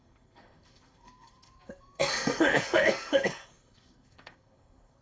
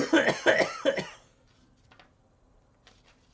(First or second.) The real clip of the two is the second